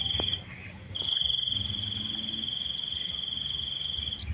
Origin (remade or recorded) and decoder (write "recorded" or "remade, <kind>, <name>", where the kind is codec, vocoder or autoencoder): recorded